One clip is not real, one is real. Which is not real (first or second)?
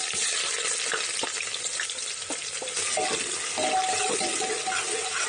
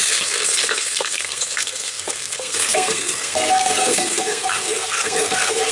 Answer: second